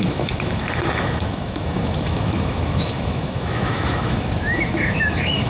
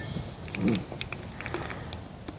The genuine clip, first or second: second